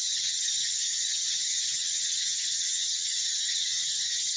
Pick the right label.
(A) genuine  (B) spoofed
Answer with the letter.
B